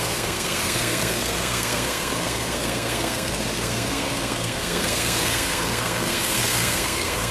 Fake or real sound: fake